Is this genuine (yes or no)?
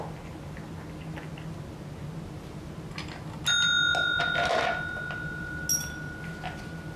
yes